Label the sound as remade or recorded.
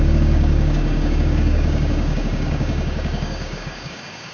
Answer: remade